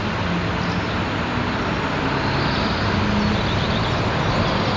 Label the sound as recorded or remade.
recorded